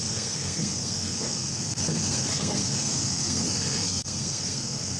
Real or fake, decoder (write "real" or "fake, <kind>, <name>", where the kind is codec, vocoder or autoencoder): fake, codec, SNAC